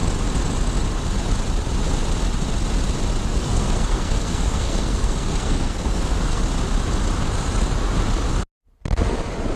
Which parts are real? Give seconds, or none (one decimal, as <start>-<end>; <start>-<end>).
0.0-3.3; 6.4-9.6